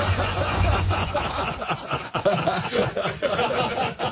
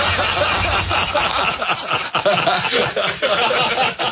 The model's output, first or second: first